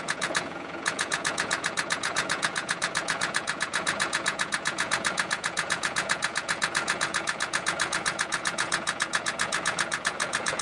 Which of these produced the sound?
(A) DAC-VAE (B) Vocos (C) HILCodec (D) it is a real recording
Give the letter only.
B